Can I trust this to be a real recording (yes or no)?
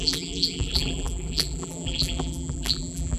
no